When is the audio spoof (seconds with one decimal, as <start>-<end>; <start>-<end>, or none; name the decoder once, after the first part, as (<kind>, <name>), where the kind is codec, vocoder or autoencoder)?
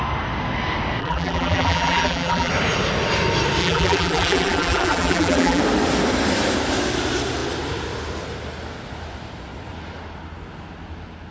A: 1.0-2.5 (vocoder, BigVGAN v2); 3.6-5.6